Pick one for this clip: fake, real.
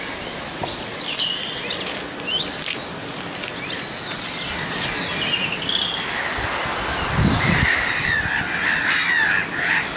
real